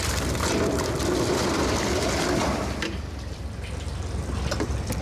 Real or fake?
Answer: fake